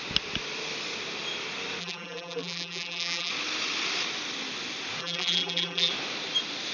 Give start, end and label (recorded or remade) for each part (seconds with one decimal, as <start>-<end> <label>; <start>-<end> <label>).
0.0-1.8 recorded; 1.8-3.3 remade; 3.3-5.0 recorded; 5.0-5.9 remade; 5.9-6.7 recorded